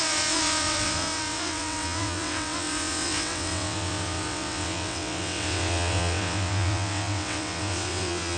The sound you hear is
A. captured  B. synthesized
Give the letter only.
B